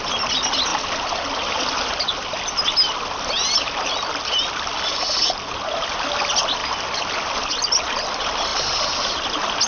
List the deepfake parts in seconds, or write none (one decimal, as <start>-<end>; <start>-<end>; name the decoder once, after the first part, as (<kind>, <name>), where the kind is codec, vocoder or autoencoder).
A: none